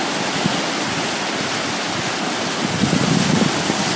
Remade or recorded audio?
recorded